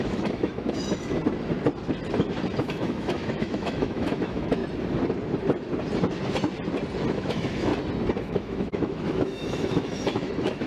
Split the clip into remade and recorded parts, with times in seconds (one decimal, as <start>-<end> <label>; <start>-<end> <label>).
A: 0.0-1.2 remade; 1.2-2.6 recorded; 2.6-4.6 remade; 4.6-7.1 recorded; 7.1-7.7 remade; 7.7-8.2 recorded; 8.2-10.7 remade